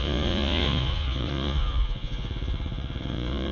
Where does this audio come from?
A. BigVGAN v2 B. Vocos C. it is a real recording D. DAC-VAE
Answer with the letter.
B